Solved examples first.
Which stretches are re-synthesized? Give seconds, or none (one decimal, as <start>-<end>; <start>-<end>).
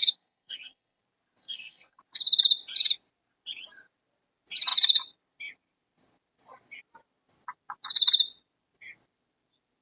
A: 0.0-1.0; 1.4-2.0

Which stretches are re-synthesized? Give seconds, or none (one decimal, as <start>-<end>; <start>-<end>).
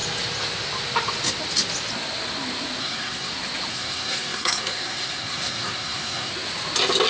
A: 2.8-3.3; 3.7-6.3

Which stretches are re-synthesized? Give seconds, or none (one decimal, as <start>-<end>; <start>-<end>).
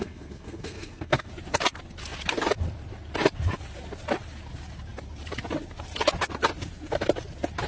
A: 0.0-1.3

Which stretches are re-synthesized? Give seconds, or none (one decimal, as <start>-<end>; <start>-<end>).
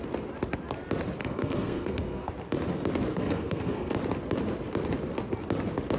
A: 1.2-2.3; 3.1-3.9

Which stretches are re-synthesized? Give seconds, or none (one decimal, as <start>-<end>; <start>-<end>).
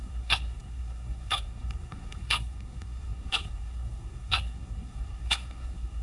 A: 0.0-6.0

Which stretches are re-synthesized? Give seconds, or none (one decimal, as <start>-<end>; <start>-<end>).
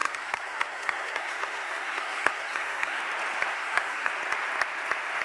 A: 0.0-3.0; 3.5-4.1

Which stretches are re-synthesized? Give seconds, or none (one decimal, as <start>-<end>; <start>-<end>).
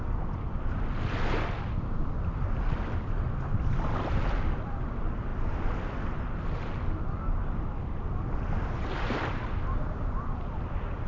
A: none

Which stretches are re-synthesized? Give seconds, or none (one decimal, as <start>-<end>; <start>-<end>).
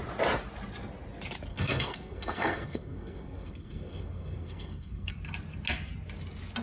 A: 1.5-5.1